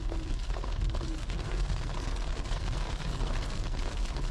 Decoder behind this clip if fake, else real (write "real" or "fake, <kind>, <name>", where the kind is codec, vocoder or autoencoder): fake, codec, SNAC